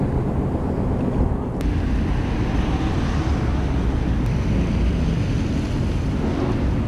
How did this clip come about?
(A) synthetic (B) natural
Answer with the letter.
B